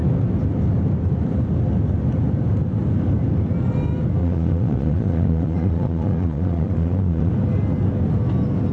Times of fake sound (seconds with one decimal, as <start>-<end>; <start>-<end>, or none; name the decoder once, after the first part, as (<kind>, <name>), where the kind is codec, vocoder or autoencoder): 4.2-7.3 (vocoder, Vocos)